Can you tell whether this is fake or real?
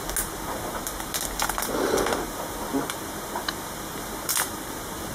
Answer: real